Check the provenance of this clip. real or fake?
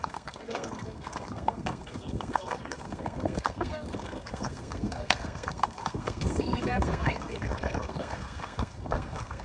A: fake